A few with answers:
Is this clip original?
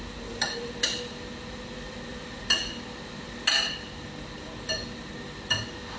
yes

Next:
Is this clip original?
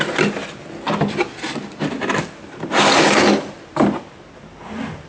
yes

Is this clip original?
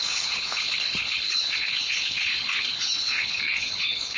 no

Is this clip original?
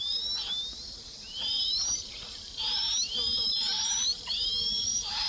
no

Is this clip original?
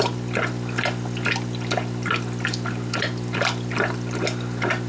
yes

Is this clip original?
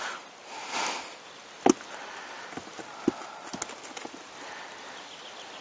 yes